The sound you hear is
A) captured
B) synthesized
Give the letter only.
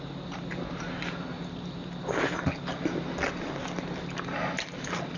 A